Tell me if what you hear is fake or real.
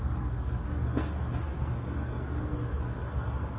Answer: fake